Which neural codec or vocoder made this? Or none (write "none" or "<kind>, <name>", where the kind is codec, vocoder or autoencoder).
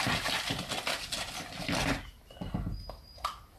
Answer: none